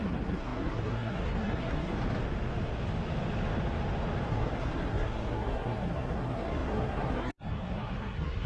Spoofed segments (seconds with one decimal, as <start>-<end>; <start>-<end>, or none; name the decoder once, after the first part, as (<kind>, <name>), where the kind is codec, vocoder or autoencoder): 0.0-2.0 (codec, SNAC); 4.3-8.5